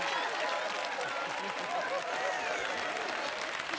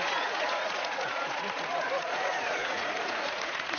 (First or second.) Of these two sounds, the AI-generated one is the second